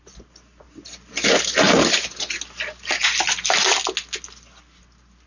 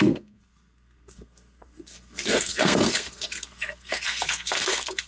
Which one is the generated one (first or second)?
second